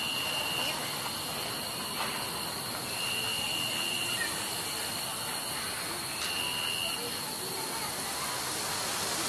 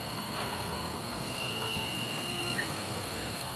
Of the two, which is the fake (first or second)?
second